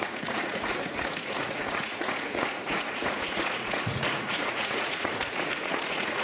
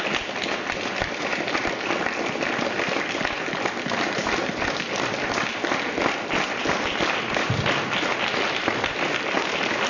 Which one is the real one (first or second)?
second